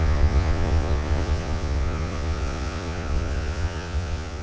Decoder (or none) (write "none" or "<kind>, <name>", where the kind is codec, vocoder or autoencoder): vocoder, Vocos